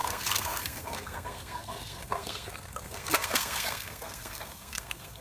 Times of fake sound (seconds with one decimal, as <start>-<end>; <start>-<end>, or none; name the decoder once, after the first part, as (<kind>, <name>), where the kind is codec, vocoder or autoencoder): 0.0-5.2 (codec, SNAC)